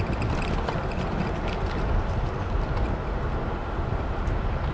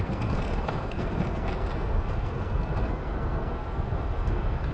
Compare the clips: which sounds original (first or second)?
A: first